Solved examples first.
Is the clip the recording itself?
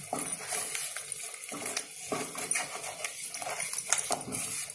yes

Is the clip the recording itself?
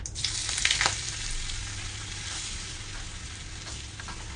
yes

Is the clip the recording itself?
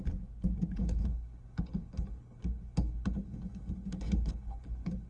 no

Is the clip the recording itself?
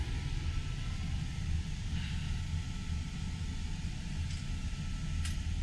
yes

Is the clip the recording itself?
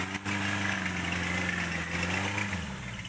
yes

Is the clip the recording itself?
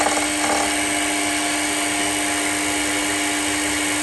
yes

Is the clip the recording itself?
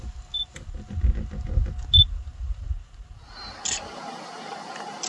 yes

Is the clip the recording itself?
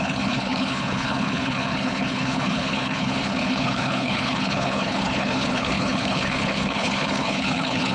no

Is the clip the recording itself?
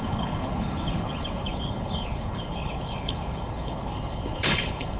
no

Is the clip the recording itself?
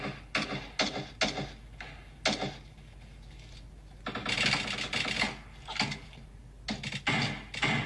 yes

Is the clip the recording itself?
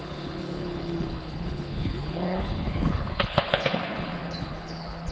no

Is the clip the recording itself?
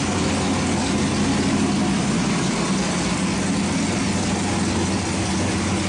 yes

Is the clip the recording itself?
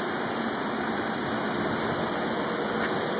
yes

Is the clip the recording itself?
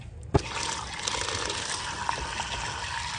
yes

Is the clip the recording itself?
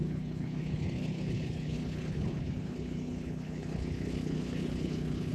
no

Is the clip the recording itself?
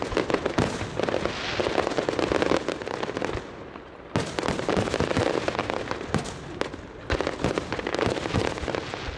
yes